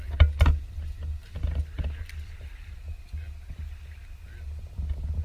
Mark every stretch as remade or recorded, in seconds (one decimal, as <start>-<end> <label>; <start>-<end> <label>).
0.0-5.2 recorded